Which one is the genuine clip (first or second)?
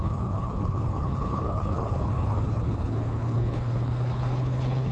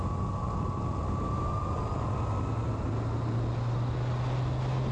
second